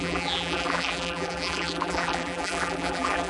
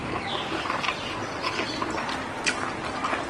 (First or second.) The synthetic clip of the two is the first